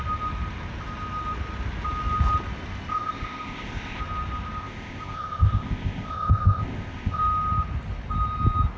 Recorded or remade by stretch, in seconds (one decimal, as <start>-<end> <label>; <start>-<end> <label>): 0.0-2.9 recorded; 2.9-4.0 remade; 4.0-4.6 recorded; 4.6-7.2 remade; 7.2-8.8 recorded